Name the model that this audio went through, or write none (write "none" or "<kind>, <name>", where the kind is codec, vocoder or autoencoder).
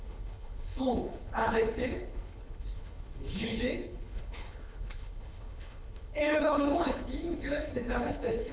codec, HILCodec